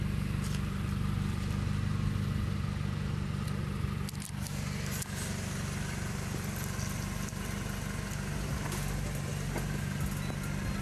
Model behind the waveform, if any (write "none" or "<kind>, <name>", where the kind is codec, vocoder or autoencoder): none